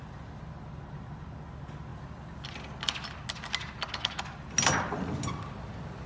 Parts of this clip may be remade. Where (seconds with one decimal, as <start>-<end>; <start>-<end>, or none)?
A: none